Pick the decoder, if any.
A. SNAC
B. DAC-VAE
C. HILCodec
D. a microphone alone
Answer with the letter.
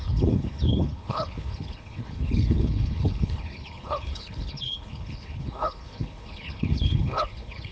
C